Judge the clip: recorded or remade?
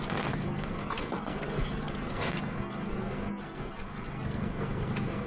remade